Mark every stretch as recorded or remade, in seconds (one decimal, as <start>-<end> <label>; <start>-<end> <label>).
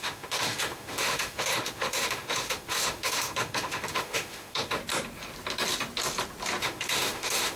0.0-4.8 remade; 4.8-6.6 recorded; 6.6-7.6 remade